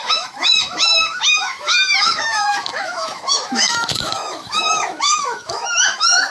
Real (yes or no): no